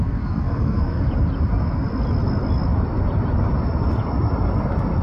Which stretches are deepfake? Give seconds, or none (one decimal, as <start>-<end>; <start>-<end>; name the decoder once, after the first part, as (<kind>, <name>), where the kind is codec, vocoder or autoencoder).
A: 0.0-1.0 (codec, SNAC)